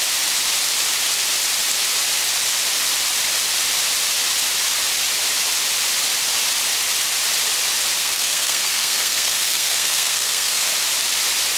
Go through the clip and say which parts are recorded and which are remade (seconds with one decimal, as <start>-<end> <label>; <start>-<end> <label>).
0.0-8.0 recorded; 8.0-10.7 remade; 10.7-11.6 recorded